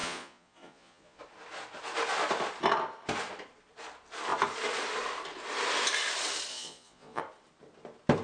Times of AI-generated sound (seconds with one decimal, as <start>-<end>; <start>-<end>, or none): 0.0-1.2; 6.5-7.2